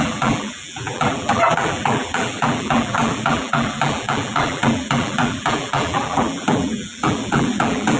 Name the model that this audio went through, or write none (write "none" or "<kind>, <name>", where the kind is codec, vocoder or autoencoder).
vocoder, BigVGAN v2